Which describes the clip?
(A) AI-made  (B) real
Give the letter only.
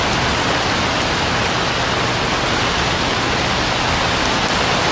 B